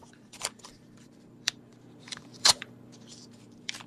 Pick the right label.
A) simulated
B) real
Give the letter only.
A